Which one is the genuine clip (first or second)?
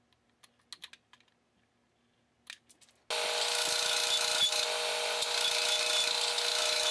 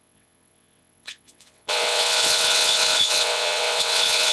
first